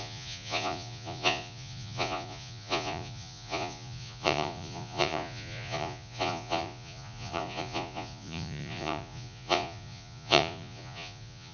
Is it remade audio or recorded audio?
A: remade